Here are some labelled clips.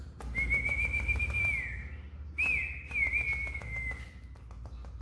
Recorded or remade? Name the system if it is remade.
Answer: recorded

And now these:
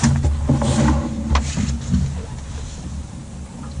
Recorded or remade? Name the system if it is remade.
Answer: recorded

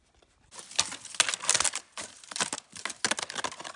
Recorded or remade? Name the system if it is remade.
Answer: recorded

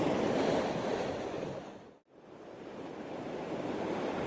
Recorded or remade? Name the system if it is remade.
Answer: recorded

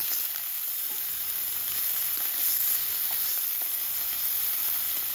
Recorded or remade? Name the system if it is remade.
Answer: recorded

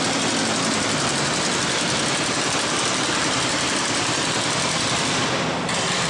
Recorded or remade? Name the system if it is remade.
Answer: remade, vocoder, BigVGAN v2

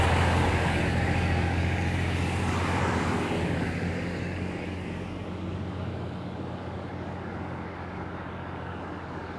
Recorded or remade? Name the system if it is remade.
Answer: remade, codec, DAC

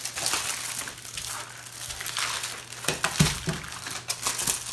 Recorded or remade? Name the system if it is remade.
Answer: recorded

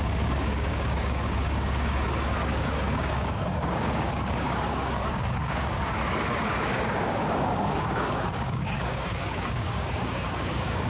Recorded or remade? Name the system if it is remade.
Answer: remade, codec, DAC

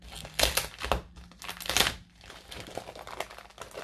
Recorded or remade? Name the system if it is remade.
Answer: recorded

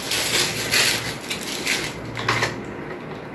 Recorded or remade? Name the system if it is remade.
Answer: recorded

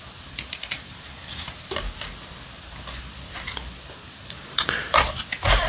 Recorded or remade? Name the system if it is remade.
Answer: recorded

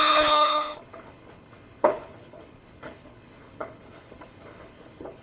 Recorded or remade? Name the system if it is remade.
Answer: remade, codec, HILCodec